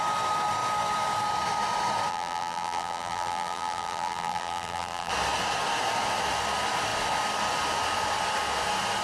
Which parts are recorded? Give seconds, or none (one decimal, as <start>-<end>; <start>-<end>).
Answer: 0.0-2.1; 5.1-9.0

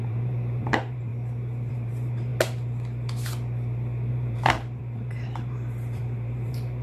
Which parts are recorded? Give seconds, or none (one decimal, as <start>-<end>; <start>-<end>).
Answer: 1.1-1.7; 2.3-4.1

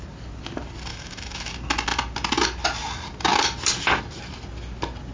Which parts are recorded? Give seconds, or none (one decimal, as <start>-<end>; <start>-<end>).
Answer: 0.0-0.9; 1.5-5.1